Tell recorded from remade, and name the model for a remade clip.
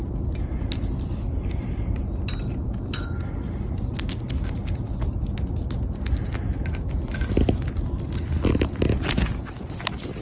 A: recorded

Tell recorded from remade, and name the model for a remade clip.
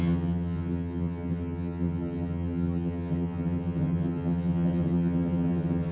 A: remade, vocoder, HiFi-GAN